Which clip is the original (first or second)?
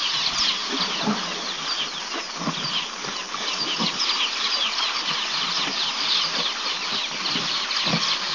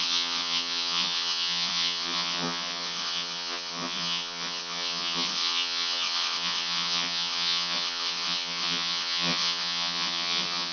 first